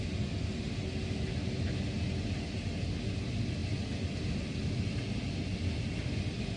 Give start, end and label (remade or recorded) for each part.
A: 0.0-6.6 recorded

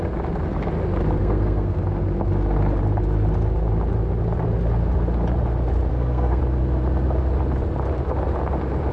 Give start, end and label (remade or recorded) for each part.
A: 0.0-1.2 recorded; 1.2-1.8 remade; 1.8-5.9 recorded; 5.9-6.4 remade; 6.4-8.9 recorded

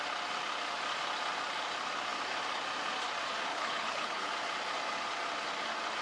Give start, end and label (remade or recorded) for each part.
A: 0.0-3.5 recorded; 3.5-4.3 remade; 4.3-6.0 recorded

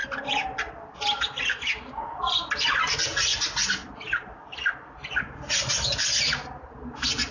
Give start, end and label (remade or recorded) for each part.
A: 0.0-1.9 remade; 1.9-7.3 recorded

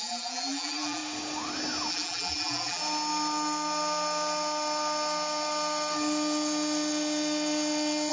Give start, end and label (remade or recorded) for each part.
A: 0.0-1.0 remade; 1.0-1.9 recorded; 1.9-2.8 remade; 2.8-8.1 recorded

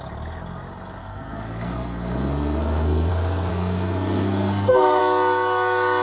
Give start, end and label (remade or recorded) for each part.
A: 0.0-1.0 recorded; 1.0-3.1 remade; 3.1-3.5 recorded; 3.5-5.0 remade; 5.0-6.0 recorded

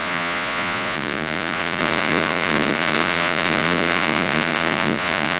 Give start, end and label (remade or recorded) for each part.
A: 0.0-5.4 remade

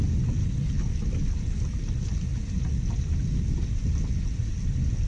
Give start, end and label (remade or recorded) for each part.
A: 0.0-0.4 recorded; 0.4-0.9 remade; 0.9-5.1 recorded